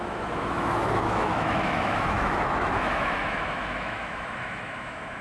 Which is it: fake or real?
fake